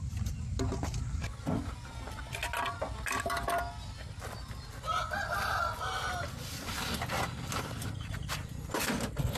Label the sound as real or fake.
real